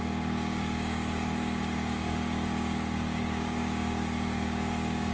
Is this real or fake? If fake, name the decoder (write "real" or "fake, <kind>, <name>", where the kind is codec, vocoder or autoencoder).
fake, codec, DAC